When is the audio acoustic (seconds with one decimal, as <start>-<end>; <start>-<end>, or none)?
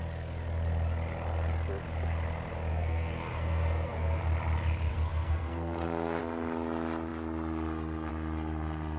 0.0-2.7; 4.2-4.9; 6.2-9.0